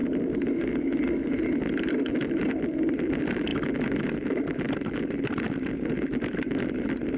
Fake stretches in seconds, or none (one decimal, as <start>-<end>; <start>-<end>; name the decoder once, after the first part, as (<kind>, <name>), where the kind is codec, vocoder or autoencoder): 1.4-2.1 (vocoder, BigVGAN v2)